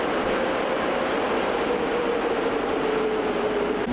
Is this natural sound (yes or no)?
no